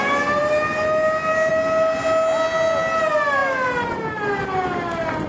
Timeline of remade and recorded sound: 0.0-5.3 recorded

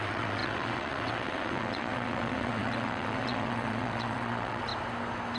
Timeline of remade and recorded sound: 0.0-4.7 remade; 4.7-5.4 recorded

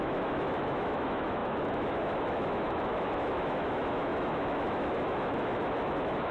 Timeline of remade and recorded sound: 0.0-6.3 remade

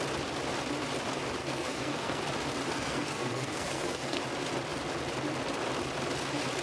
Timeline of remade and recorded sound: 0.0-1.4 recorded; 1.4-2.2 remade; 2.2-2.7 recorded; 2.7-4.2 remade; 4.2-6.6 recorded

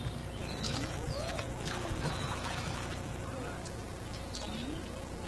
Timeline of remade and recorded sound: 0.0-0.4 recorded; 0.4-3.3 remade; 3.3-5.3 recorded

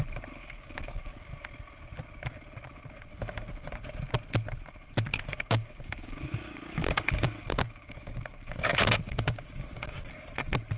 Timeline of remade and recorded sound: 0.0-0.4 recorded; 0.4-1.3 remade; 1.3-3.1 recorded; 3.1-3.7 remade; 3.7-5.1 recorded; 5.1-10.1 remade; 10.1-10.8 recorded